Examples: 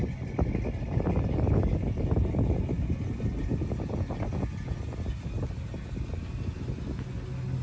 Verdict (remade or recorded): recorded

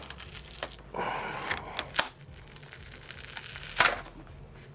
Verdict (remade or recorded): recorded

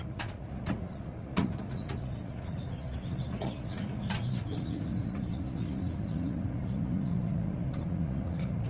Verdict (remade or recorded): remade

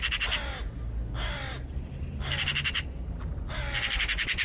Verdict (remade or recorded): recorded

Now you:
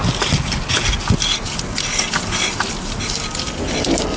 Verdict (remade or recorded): recorded